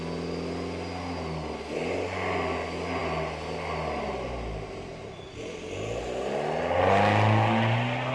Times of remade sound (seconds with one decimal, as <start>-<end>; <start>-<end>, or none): none